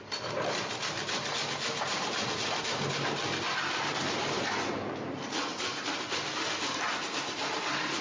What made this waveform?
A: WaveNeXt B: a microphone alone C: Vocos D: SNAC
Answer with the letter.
B